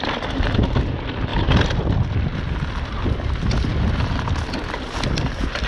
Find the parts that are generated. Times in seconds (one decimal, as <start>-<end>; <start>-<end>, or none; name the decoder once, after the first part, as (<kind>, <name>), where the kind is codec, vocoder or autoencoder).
none